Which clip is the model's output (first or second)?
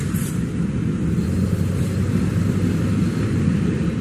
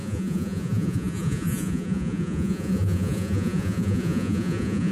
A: second